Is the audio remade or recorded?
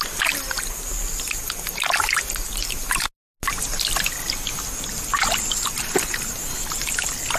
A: recorded